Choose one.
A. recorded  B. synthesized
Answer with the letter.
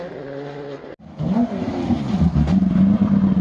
A